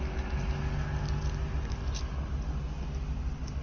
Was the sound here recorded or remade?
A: recorded